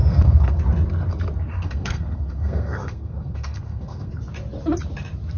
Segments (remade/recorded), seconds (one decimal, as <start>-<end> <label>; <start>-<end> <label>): 0.0-0.6 remade; 0.6-1.5 recorded; 1.5-4.1 remade; 4.1-5.4 recorded